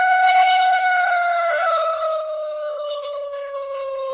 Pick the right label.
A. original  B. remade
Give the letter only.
B